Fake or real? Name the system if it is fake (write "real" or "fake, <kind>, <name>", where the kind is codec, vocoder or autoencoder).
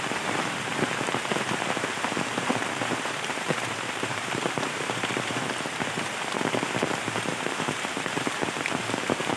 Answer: fake, vocoder, BigVGAN v2